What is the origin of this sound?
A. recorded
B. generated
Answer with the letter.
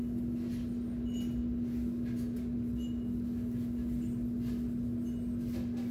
A